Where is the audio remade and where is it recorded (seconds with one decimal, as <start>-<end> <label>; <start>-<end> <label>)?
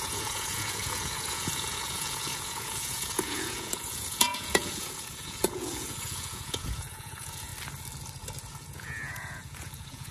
0.0-7.5 remade; 7.5-8.5 recorded; 8.5-10.1 remade